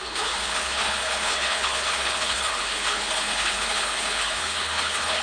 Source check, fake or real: fake